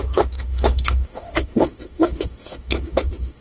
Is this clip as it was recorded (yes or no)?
no